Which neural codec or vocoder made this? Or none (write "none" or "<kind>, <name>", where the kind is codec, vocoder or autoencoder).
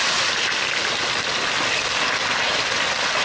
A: none